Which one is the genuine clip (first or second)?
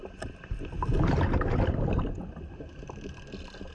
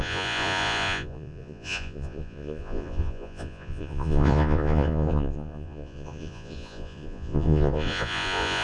first